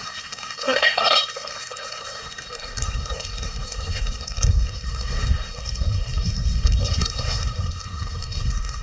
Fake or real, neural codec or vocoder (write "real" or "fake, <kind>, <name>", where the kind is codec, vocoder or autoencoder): fake, codec, SNAC